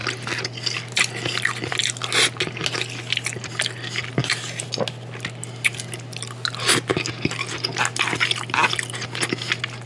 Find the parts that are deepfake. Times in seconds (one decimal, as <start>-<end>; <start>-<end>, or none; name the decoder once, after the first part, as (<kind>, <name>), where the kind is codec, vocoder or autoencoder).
none